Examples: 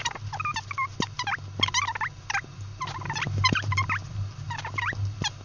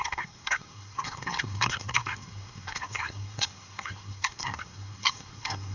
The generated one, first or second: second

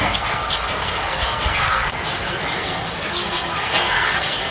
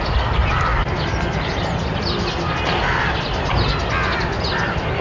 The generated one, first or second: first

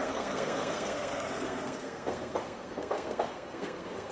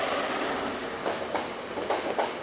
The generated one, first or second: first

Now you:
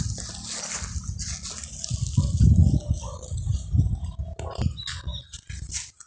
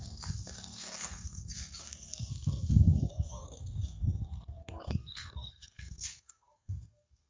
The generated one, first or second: second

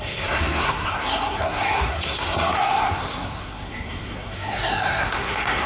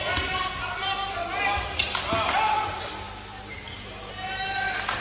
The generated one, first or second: first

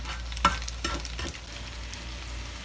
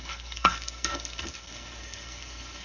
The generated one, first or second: second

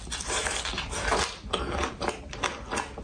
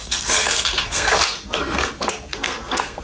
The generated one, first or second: second